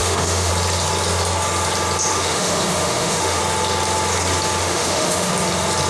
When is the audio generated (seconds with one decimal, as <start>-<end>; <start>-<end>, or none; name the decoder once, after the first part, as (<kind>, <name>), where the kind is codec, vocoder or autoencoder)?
0.0-0.5 (autoencoder, DAC-VAE); 2.1-3.4; 4.6-5.3